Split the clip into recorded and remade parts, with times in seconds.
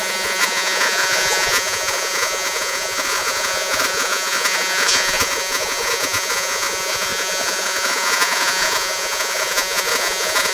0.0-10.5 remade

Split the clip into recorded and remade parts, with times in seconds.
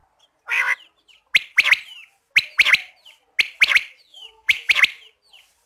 0.0-4.1 recorded; 4.1-4.7 remade; 4.7-5.7 recorded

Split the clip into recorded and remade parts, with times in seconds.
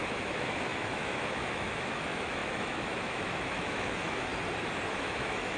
0.0-4.3 remade; 4.3-4.9 recorded; 4.9-5.6 remade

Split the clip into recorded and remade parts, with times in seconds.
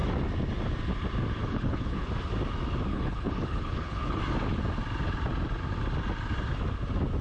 0.0-1.4 recorded; 1.4-2.1 remade; 2.1-2.9 recorded; 2.9-4.2 remade; 4.2-7.2 recorded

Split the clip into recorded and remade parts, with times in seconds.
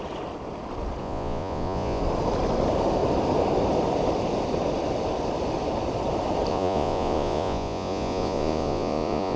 0.0-1.0 recorded; 1.0-2.0 remade; 2.0-6.5 recorded; 6.5-9.4 remade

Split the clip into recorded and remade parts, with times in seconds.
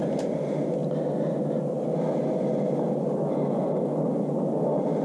0.0-5.0 recorded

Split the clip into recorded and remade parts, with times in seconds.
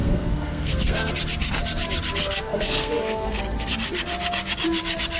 0.0-1.1 remade; 1.1-2.2 recorded; 2.2-3.4 remade; 3.4-5.2 recorded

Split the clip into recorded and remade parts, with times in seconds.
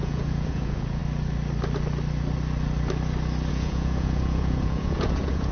0.0-1.0 remade; 1.0-3.5 recorded; 3.5-5.5 remade